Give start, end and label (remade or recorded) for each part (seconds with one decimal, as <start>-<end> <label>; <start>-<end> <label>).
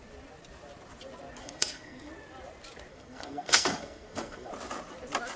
0.0-1.4 recorded; 1.4-2.1 remade; 2.1-2.9 recorded; 2.9-4.5 remade; 4.5-5.4 recorded